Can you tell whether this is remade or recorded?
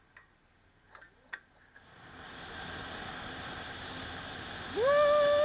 recorded